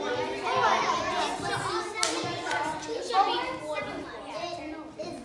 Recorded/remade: recorded